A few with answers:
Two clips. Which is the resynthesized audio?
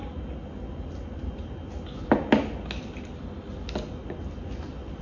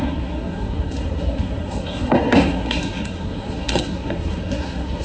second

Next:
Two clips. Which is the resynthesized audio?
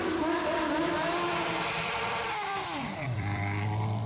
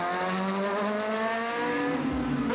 first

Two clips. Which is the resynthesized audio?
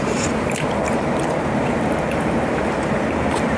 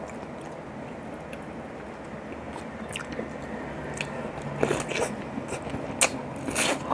first